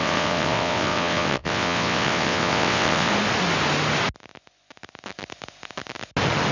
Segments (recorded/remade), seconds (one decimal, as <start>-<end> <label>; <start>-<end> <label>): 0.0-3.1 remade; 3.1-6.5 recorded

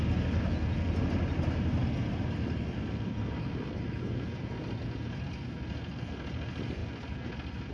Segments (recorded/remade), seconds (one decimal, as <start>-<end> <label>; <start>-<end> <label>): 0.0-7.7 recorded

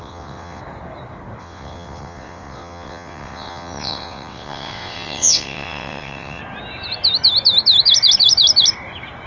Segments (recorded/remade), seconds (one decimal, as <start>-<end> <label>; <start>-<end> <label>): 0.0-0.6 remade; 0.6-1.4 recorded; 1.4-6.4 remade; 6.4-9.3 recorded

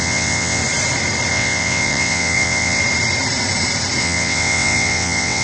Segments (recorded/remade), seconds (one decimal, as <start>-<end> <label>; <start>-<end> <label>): 0.0-0.6 remade; 0.6-1.3 recorded; 1.3-2.8 remade; 2.8-4.0 recorded; 4.0-5.4 remade